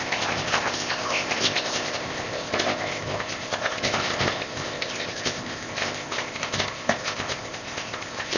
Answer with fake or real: fake